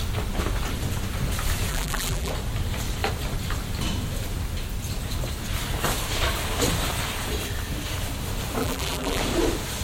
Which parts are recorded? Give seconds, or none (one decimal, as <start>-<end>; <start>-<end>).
0.0-1.7; 2.3-8.6; 9.2-9.8